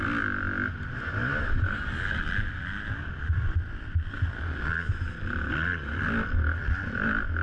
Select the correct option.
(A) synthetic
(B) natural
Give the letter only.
B